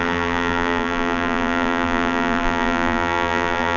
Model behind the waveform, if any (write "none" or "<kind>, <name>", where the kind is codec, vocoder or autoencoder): vocoder, BigVGAN v2